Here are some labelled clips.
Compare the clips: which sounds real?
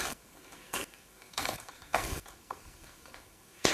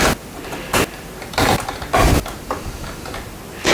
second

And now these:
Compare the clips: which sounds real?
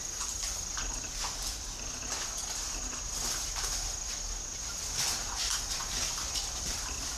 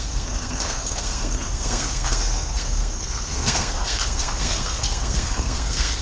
first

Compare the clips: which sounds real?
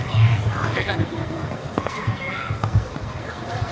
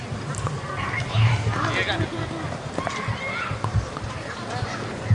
second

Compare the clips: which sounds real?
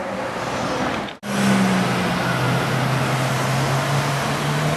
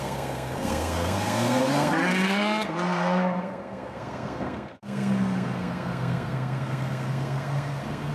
first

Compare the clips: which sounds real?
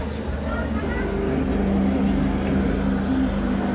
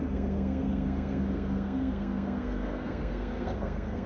first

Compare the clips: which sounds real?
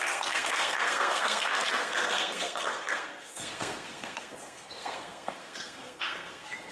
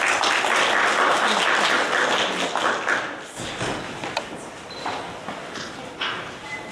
second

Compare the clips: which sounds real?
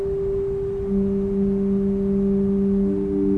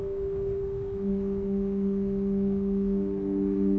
first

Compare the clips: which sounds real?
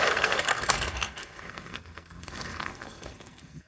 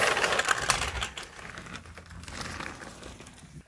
second